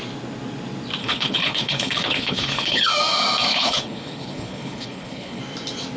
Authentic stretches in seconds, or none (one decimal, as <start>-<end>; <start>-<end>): 0.0-1.0; 2.9-3.5; 5.4-6.0